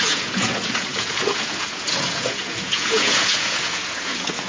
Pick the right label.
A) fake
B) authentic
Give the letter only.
A